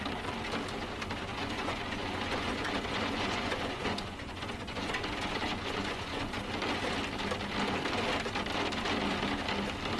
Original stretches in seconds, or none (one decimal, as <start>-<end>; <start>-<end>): 0.0-1.3; 6.4-10.0